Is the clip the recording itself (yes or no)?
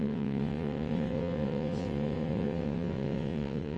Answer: no